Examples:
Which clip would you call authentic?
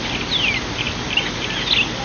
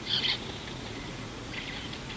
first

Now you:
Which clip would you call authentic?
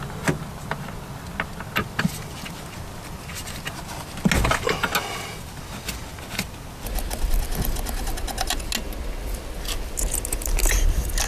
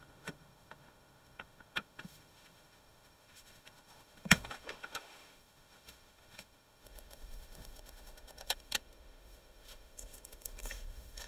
first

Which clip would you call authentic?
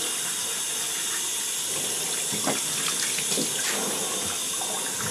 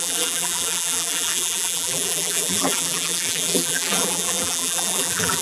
first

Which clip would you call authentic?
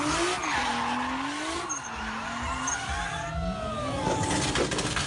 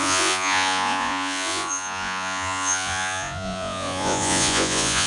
first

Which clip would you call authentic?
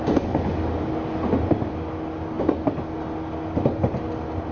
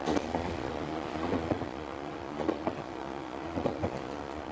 first